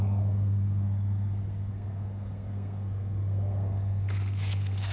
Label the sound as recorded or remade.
remade